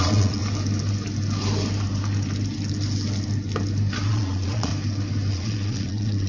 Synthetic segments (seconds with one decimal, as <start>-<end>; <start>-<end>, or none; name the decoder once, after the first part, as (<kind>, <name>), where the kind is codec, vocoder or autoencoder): 0.0-0.4 (vocoder, Vocos); 4.1-4.7; 5.3-6.3